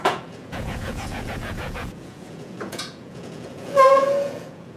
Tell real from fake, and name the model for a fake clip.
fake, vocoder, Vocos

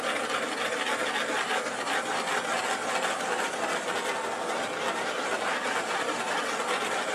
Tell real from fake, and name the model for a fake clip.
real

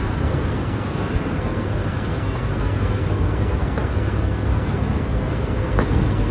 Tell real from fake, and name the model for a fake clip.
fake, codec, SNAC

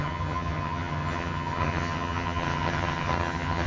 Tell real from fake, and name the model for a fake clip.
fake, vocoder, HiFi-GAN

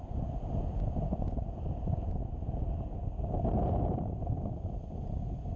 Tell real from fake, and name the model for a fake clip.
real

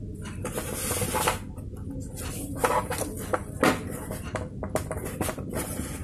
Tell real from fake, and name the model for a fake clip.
real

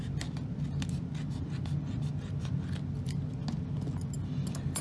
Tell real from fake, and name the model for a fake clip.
real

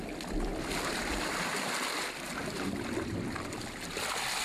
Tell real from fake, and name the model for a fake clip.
real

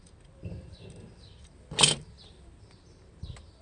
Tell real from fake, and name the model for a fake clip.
real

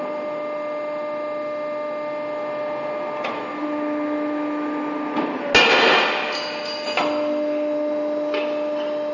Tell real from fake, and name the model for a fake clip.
real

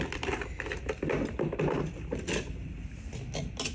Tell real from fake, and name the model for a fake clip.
real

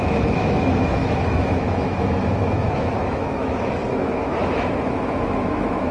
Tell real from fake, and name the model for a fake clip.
fake, autoencoder, DAC-VAE